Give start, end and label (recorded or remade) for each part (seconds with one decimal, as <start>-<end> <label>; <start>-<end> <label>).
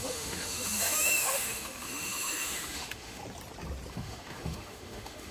0.0-3.2 remade; 3.2-3.9 recorded; 3.9-5.3 remade